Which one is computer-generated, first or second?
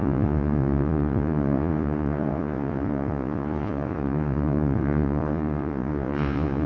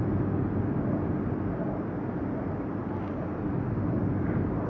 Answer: first